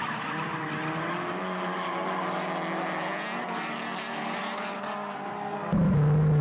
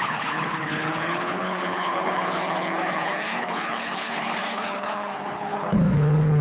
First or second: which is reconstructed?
second